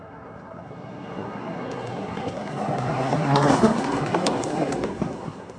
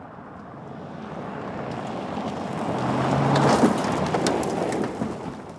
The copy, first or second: first